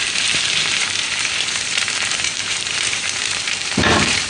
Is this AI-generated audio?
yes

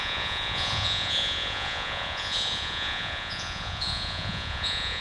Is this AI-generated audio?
yes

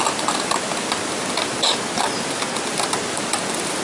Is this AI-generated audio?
no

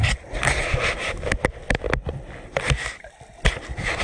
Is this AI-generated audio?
no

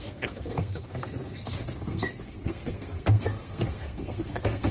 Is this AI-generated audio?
yes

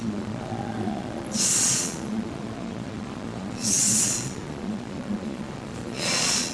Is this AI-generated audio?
yes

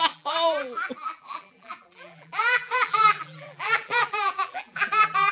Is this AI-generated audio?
yes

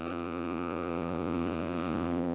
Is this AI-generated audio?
yes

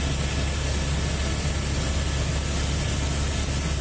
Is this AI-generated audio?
no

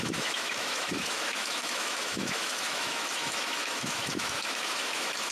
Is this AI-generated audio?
yes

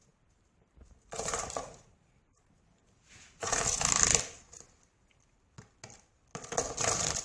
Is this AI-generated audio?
no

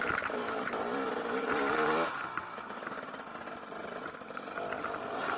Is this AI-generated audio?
no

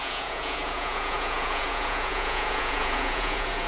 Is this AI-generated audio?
yes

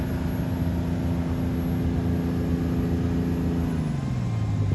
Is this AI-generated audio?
no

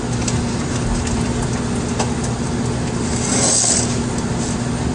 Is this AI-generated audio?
no